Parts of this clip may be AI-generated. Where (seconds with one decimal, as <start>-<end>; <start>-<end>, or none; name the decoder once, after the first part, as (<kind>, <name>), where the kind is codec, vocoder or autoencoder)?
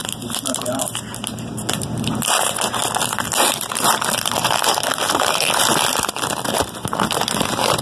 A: 0.0-2.8 (vocoder, BigVGAN v2); 3.7-7.8